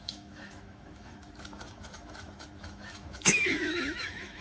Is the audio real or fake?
fake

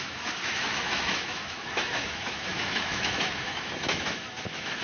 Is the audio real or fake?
fake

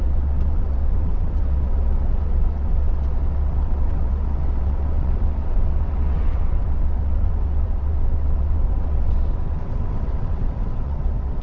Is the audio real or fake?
fake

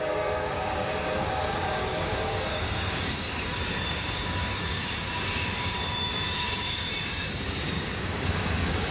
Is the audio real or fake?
fake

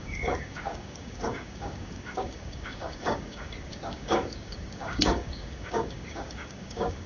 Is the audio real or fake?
fake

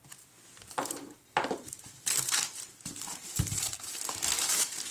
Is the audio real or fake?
fake